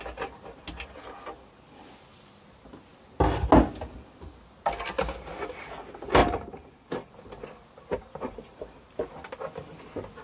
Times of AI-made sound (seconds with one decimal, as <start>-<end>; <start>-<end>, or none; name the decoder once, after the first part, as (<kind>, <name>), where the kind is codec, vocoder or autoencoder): 6.2-7.1 (vocoder, BigVGAN v2); 7.9-8.6